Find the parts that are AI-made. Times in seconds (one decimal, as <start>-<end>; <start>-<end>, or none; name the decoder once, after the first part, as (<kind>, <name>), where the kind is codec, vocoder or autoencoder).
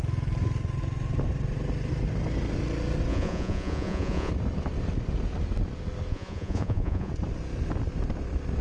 3.1-4.3 (vocoder, Vocos); 6.1-7.1